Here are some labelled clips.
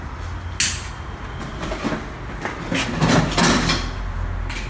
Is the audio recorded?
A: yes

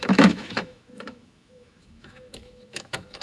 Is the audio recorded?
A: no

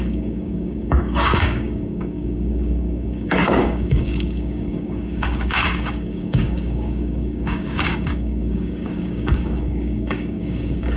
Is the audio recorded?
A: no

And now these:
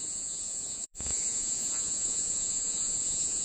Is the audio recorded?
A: no